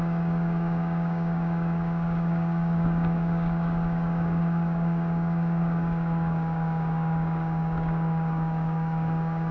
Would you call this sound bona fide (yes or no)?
no